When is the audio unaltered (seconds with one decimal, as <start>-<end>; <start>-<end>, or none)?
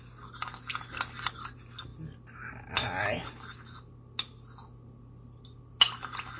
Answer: 0.0-6.4